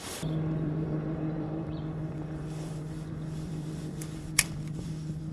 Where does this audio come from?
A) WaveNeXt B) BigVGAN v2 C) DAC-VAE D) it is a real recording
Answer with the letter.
B